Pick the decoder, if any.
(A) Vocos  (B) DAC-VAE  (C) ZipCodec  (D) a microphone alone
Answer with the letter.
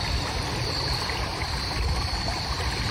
D